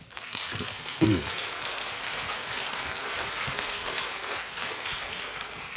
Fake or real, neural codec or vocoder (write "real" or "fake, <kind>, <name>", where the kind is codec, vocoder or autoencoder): fake, codec, SNAC